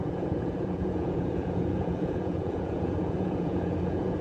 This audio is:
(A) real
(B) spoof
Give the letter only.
B